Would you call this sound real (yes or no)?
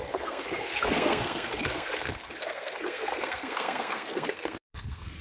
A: no